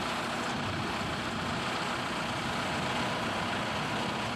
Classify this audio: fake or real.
real